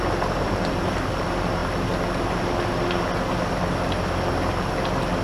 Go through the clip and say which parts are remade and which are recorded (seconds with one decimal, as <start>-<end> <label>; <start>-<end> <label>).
0.0-5.2 recorded